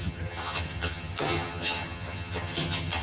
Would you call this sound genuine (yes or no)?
no